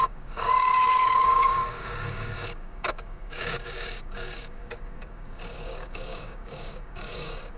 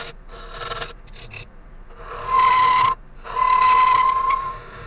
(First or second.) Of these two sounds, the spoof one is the first